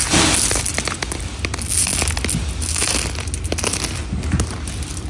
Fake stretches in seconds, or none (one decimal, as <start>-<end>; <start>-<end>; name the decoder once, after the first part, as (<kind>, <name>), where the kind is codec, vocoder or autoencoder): none